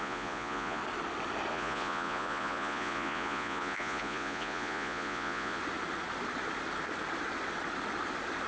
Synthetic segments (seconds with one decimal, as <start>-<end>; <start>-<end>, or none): 0.0-0.8; 1.5-5.6